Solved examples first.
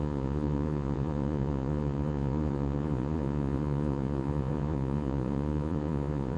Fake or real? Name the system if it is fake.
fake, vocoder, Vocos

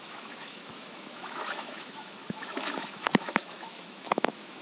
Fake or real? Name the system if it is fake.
fake, autoencoder, DAC-VAE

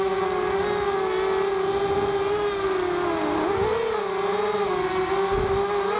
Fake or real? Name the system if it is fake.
real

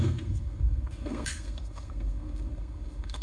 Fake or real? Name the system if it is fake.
fake, codec, SNAC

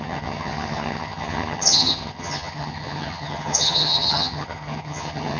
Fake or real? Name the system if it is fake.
fake, vocoder, HiFi-GAN